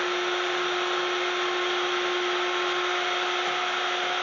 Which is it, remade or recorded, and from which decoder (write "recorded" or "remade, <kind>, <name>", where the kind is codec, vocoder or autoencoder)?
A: recorded